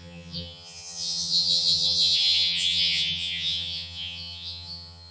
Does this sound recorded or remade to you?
remade